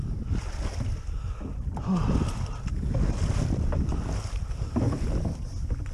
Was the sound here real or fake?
real